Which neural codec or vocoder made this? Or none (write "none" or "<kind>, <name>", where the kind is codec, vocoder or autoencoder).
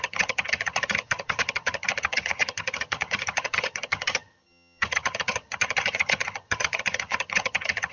vocoder, HiFi-GAN